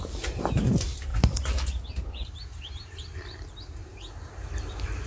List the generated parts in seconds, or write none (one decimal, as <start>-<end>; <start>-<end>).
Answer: 0.0-1.1; 1.8-3.8